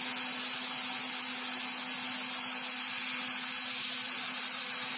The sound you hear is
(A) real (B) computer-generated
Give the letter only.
A